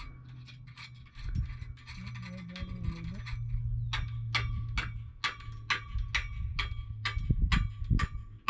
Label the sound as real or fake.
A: real